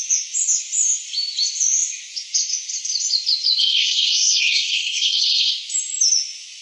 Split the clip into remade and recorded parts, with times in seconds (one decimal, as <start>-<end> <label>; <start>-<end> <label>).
0.0-3.6 recorded; 3.6-5.5 remade; 5.5-6.6 recorded